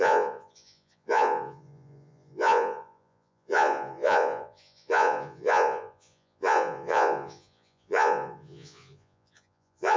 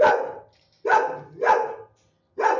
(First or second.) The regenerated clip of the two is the first